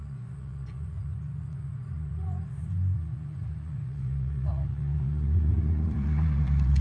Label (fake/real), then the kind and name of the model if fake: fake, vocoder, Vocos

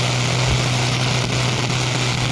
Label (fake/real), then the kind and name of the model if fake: real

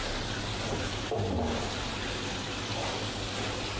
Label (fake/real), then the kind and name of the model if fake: real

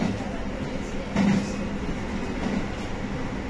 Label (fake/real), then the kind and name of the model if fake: real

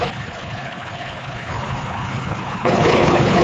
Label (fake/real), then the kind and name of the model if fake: fake, codec, HILCodec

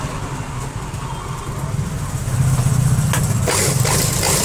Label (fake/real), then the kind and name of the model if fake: real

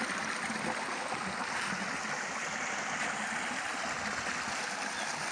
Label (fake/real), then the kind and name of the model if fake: real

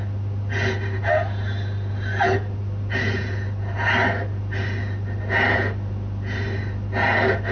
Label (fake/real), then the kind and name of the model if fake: real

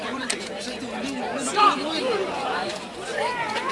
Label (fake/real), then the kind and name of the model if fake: fake, vocoder, BigVGAN v2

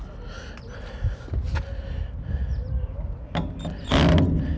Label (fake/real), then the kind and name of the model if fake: real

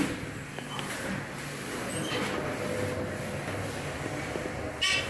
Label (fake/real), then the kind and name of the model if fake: real